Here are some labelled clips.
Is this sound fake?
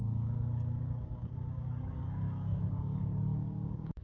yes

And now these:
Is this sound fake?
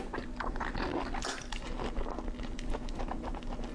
no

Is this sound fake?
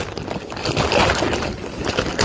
no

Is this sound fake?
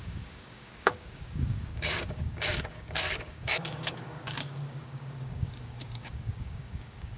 yes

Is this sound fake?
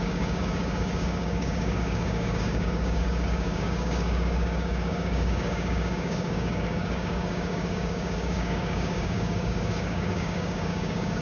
yes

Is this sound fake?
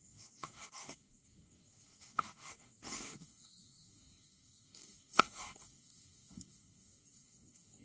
yes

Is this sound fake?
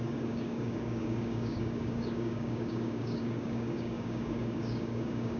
yes